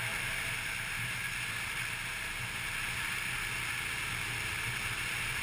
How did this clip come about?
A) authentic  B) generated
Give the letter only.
A